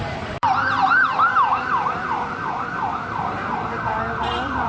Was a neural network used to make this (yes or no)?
yes